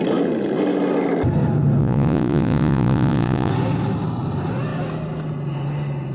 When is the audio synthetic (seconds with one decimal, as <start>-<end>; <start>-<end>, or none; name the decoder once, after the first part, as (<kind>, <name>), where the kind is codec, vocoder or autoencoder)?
1.8-3.5 (vocoder, Vocos)